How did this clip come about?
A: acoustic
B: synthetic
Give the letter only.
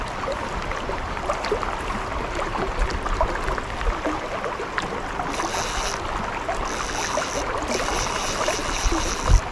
A